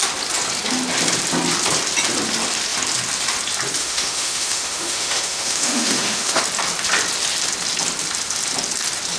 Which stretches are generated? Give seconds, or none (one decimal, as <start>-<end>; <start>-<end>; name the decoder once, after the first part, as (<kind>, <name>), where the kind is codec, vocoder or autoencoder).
3.8-6.4 (autoencoder, DAC-VAE)

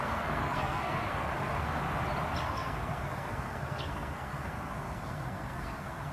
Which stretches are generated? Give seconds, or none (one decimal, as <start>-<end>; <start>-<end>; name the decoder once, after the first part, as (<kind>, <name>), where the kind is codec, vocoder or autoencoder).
0.0-1.8 (codec, SNAC); 2.4-6.1

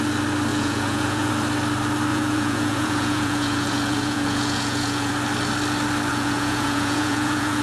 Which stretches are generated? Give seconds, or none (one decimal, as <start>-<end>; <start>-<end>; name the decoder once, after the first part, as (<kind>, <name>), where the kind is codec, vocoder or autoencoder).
0.5-1.3 (vocoder, Vocos); 2.1-5.1; 6.1-7.6

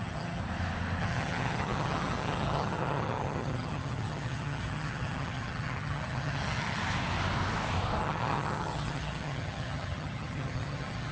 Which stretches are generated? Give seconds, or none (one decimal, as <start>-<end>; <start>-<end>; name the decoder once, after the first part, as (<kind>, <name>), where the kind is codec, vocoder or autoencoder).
0.0-0.4 (vocoder, HiFi-GAN); 1.0-6.8; 8.0-11.1

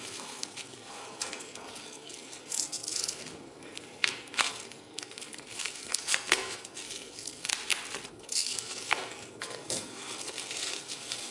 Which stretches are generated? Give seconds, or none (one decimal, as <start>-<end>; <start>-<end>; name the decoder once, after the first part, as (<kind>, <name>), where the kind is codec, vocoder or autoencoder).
0.0-7.5 (codec, SNAC); 8.1-11.3

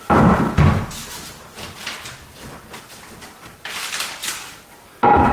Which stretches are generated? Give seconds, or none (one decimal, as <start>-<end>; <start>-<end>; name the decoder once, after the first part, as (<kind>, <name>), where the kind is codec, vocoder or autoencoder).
4.2-4.8 (vocoder, BigVGAN v2)

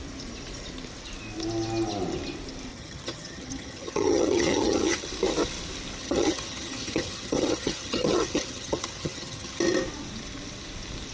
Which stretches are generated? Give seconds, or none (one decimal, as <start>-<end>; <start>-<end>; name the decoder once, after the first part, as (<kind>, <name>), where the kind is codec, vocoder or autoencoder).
2.7-5.1 (vocoder, HiFi-GAN); 6.0-9.6

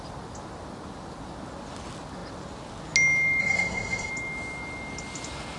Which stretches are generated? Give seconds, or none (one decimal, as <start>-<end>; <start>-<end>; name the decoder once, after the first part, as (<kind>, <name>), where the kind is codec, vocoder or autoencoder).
3.4-4.1 (codec, SNAC)